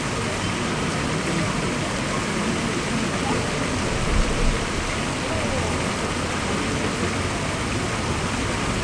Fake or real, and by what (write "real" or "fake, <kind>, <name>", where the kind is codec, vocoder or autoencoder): real